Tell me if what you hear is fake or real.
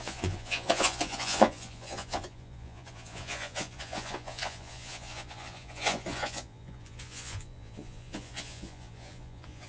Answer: fake